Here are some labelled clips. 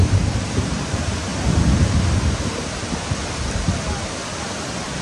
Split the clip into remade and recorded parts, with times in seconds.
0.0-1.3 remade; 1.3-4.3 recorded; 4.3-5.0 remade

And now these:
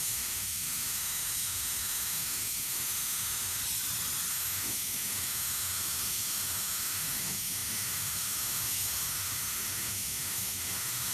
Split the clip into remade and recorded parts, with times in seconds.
0.0-3.6 remade; 3.6-4.3 recorded; 4.3-11.1 remade

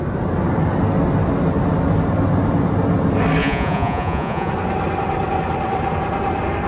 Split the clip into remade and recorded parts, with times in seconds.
0.0-3.4 recorded; 3.4-4.5 remade; 4.5-6.7 recorded

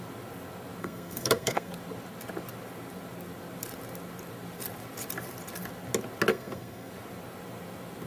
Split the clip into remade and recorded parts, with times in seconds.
0.0-0.8 recorded; 0.8-1.7 remade; 1.7-6.3 recorded; 6.3-6.9 remade; 6.9-8.1 recorded

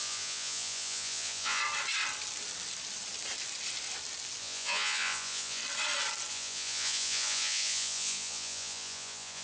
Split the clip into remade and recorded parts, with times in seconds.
0.0-1.6 remade; 1.6-4.4 recorded; 4.4-5.6 remade; 5.6-6.3 recorded; 6.3-9.4 remade

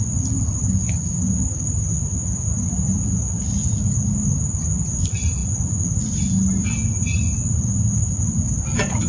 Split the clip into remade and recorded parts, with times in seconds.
0.0-9.1 recorded